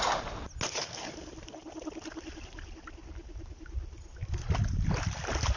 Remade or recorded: recorded